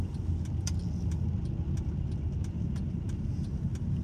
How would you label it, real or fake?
real